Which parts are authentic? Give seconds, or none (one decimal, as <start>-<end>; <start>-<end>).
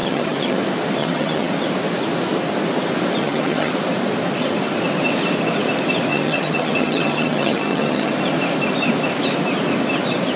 0.6-1.0; 1.5-3.2; 3.7-6.1; 8.1-10.4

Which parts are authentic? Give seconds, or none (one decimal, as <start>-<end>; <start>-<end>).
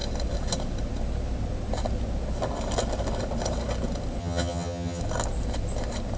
0.0-4.2; 5.0-6.2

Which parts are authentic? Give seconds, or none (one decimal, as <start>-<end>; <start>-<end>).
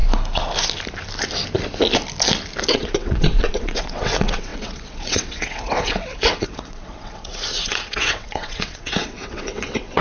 0.0-2.7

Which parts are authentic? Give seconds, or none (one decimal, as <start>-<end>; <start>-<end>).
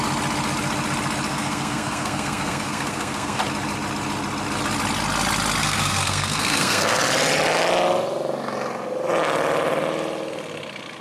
0.0-1.3; 3.4-5.6; 7.0-11.0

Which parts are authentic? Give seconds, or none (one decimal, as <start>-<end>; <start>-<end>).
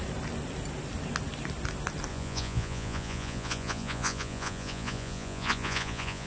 0.0-2.1